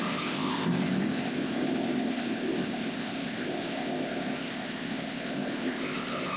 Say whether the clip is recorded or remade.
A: remade